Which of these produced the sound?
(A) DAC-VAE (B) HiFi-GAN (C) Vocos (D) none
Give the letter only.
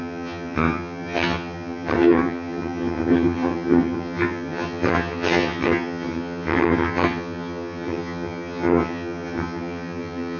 B